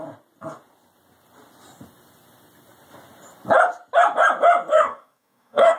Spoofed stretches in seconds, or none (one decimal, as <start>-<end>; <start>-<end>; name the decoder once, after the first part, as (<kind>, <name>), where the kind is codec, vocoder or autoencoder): 4.7-5.8 (codec, DAC)